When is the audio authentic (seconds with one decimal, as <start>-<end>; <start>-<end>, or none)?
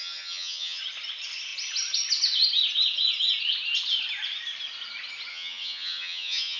0.8-5.3